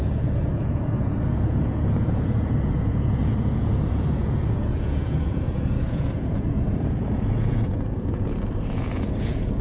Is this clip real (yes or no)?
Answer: no